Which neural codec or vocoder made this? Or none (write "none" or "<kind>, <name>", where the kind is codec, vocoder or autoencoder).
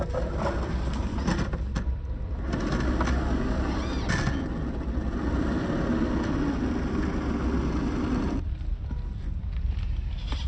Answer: none